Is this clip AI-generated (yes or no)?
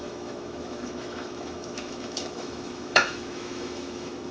yes